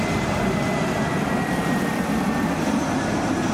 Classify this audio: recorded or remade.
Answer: remade